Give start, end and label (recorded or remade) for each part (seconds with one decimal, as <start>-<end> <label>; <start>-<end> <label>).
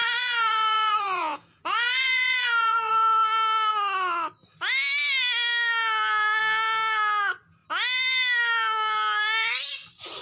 0.0-2.9 remade; 2.9-10.2 recorded